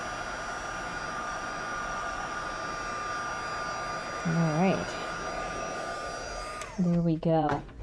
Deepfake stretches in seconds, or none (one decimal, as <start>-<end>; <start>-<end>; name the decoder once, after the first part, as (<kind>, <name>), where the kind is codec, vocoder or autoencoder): 1.1-2.5 (vocoder, Vocos); 6.8-7.8